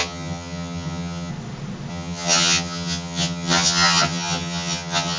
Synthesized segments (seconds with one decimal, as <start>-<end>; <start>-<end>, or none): 0.0-1.3; 1.9-5.2